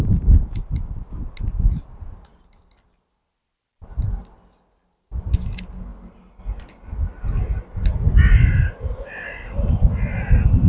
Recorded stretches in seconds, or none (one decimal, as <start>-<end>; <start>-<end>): 0.0-10.7